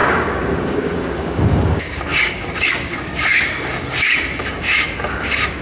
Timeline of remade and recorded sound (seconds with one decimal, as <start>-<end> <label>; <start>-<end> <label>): 0.0-5.6 remade